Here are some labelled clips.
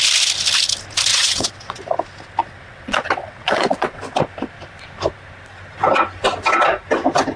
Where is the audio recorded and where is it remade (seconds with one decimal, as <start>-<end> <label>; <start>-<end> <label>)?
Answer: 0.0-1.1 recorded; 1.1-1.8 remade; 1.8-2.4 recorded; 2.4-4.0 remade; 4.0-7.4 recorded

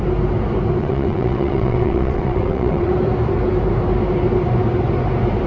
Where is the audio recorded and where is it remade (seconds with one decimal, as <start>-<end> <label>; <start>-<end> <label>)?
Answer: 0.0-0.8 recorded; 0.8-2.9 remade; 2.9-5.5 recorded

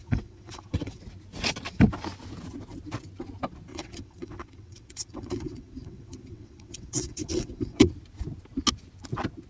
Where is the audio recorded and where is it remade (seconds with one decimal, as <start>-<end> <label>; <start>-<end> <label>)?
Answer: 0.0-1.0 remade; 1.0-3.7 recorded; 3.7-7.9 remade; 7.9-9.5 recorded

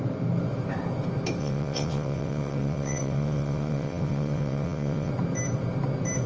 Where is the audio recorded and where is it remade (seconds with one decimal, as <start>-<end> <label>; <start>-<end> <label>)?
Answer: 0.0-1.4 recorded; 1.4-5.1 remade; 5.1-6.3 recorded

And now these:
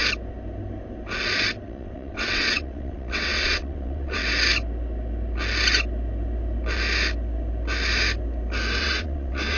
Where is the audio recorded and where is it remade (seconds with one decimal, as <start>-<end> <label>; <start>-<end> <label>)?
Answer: 0.0-1.6 recorded; 1.6-4.2 remade; 4.2-8.8 recorded; 8.8-9.6 remade

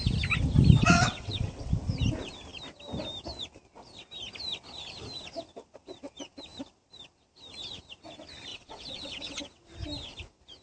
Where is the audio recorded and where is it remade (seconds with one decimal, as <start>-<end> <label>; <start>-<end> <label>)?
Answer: 0.0-0.8 recorded; 0.8-1.7 remade; 1.7-8.5 recorded; 8.5-9.4 remade; 9.4-10.6 recorded